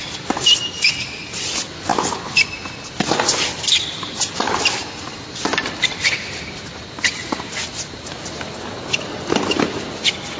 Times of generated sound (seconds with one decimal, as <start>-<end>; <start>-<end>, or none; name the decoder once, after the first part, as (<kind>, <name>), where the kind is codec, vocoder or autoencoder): none